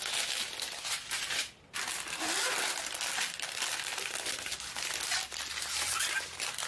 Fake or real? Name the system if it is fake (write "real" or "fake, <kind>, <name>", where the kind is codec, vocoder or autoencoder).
real